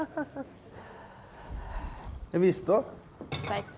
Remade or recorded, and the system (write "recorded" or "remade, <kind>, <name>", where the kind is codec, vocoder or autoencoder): recorded